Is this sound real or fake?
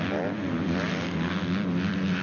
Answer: real